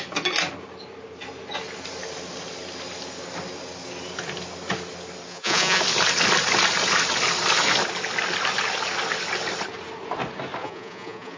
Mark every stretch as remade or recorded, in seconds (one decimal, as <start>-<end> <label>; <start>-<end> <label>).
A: 0.0-5.3 recorded; 5.3-5.8 remade; 5.8-10.6 recorded; 10.6-11.4 remade